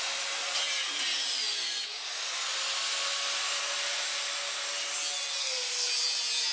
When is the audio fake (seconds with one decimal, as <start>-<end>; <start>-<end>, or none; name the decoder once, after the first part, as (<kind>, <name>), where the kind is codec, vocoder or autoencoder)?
5.4-5.9 (codec, SNAC)